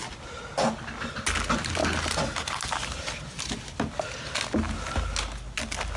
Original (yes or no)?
yes